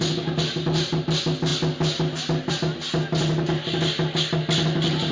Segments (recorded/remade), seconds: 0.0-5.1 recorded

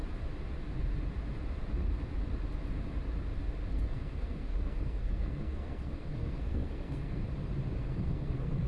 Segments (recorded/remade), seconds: 0.0-3.7 recorded; 3.7-7.2 remade; 7.2-7.8 recorded; 7.8-8.7 remade

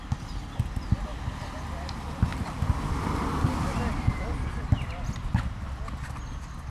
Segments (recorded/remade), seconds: 0.0-1.1 recorded; 1.1-1.8 remade; 1.8-2.3 recorded; 2.3-4.9 remade; 4.9-6.7 recorded

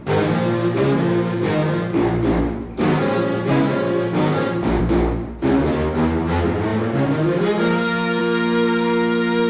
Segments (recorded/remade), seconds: 0.0-9.5 recorded

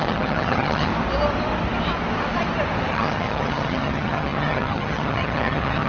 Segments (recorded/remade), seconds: 0.0-0.9 remade; 0.9-2.9 recorded; 2.9-5.9 remade